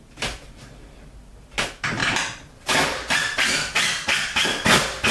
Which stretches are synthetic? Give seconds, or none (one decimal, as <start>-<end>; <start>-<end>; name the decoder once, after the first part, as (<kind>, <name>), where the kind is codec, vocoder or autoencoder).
2.0-3.1 (vocoder, BigVGAN v2)

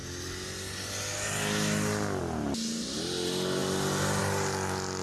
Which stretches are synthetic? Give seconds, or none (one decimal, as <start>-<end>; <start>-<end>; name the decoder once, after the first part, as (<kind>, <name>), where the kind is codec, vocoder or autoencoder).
none

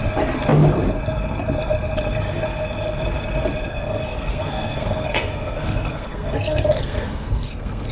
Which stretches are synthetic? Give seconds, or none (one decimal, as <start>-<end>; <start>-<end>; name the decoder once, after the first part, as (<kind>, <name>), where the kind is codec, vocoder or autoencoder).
3.7-7.9 (codec, SNAC)

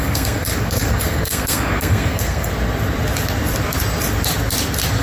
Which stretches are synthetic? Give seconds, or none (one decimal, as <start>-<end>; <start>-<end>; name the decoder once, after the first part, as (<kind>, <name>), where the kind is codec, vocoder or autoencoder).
0.0-2.5 (codec, SNAC)

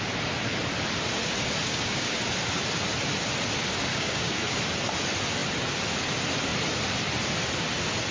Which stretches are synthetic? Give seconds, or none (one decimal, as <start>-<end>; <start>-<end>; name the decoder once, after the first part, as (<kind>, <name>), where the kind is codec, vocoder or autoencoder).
1.7-2.2 (codec, DAC); 3.9-4.6

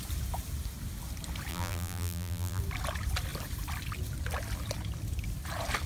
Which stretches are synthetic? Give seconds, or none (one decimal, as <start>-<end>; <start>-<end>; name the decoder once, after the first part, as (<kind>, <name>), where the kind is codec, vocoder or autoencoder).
1.5-2.6 (vocoder, BigVGAN v2)

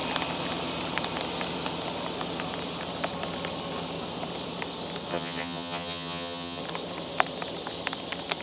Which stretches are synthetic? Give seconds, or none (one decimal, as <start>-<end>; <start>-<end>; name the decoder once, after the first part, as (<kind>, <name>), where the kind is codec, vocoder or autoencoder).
5.1-6.6 (vocoder, HiFi-GAN)